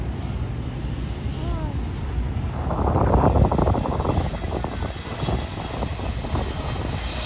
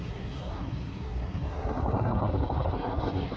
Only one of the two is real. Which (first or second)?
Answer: first